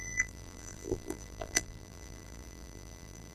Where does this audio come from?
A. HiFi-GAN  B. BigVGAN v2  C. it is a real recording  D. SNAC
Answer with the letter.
B